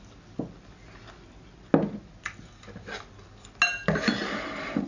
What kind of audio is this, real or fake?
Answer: real